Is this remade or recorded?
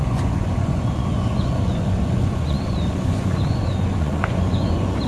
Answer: remade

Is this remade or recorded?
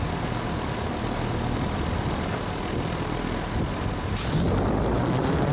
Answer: recorded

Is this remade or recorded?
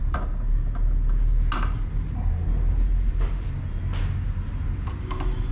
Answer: recorded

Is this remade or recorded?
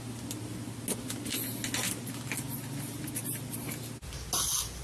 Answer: recorded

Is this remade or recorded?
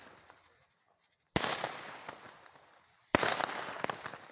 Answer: recorded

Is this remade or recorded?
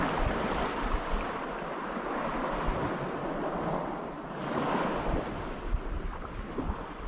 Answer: recorded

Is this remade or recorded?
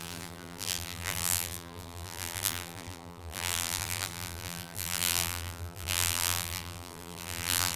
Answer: remade